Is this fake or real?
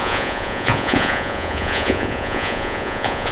fake